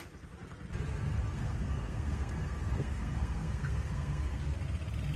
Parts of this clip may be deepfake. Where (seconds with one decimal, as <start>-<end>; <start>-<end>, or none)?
1.3-4.4